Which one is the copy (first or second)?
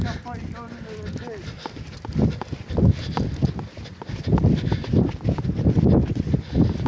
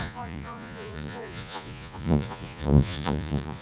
second